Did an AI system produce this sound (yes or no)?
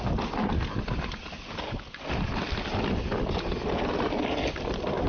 no